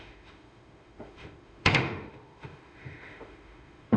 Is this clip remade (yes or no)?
yes